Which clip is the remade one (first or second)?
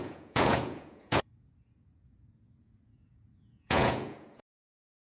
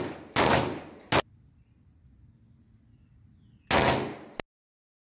first